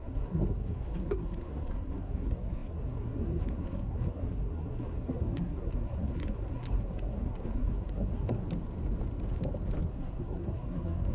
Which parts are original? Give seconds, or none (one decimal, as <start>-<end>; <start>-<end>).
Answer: 8.4-9.9